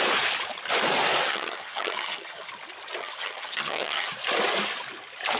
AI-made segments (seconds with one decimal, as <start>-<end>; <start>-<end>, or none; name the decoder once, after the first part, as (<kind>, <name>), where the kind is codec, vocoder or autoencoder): 1.3-2.5 (vocoder, HiFi-GAN); 3.0-4.1